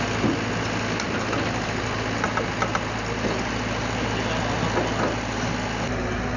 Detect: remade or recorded recorded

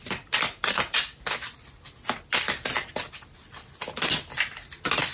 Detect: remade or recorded recorded